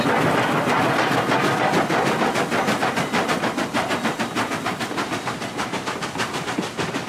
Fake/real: real